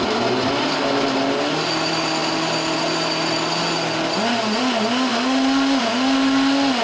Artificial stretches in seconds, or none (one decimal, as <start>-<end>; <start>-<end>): none